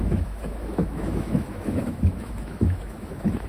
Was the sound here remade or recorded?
remade